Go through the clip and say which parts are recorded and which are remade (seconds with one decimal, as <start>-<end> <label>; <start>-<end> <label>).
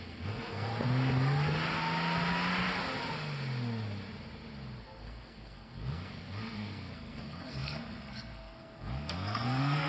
0.0-0.7 remade; 0.7-4.8 recorded; 4.8-9.9 remade